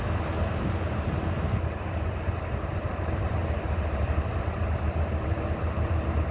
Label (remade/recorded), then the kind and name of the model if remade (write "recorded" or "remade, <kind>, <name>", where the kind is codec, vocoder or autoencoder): remade, vocoder, BigVGAN v2